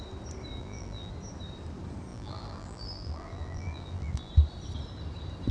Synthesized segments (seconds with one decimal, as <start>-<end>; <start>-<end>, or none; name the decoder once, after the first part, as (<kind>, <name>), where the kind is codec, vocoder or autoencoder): 0.6-1.1 (vocoder, BigVGAN v2); 2.1-4.3